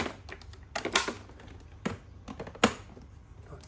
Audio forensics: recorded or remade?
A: recorded